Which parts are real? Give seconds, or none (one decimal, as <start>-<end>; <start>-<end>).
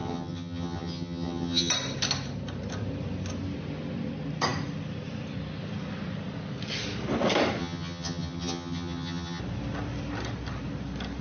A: 1.7-7.6; 9.4-11.2